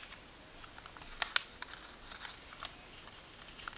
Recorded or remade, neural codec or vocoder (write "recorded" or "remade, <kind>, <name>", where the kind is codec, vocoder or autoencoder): recorded